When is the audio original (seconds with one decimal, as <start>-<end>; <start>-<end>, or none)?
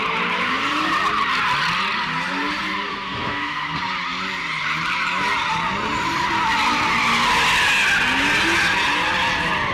0.0-2.9; 3.8-9.7